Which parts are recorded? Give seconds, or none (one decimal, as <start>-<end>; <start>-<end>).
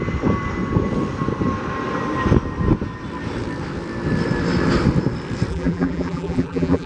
0.0-5.5